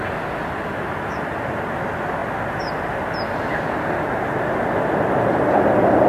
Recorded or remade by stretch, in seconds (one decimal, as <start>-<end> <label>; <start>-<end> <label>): 0.0-6.1 recorded